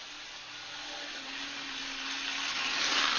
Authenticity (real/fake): real